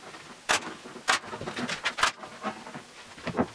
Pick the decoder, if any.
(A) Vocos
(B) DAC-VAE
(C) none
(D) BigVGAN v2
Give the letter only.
C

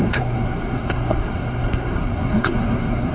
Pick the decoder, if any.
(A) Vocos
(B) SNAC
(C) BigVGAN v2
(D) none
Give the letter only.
B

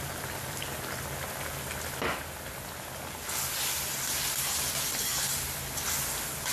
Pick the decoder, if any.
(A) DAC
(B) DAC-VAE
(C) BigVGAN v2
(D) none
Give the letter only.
D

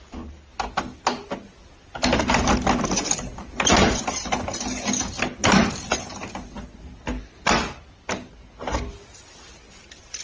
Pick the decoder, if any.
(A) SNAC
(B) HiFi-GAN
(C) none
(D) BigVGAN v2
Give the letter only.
C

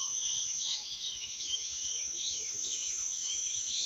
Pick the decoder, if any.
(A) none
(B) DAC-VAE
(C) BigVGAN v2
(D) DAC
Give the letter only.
B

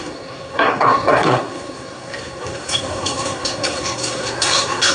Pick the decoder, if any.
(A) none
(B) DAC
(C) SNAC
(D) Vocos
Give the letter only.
C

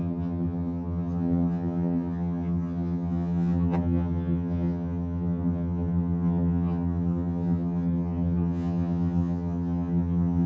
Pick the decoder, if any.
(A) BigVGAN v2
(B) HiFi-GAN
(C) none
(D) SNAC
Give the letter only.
B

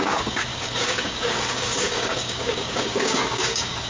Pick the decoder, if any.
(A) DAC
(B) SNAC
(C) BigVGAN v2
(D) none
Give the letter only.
A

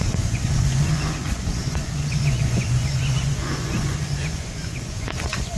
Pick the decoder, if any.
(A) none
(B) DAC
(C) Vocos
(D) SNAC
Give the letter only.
C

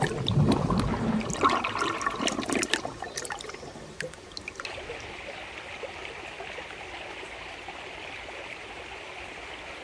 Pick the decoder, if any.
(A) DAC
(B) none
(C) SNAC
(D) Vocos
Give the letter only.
B